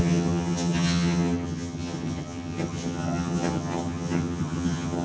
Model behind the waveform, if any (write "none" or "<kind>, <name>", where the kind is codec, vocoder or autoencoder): vocoder, HiFi-GAN